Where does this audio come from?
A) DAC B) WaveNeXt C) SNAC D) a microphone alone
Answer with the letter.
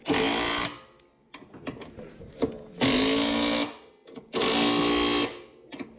D